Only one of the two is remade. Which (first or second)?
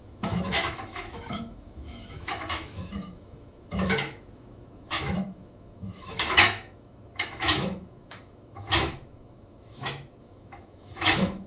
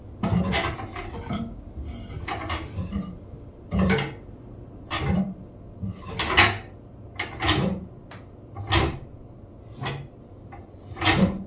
first